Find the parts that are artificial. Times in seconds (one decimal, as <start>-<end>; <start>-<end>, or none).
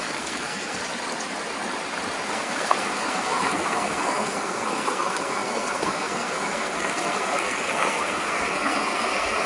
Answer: 0.0-0.8; 2.3-9.5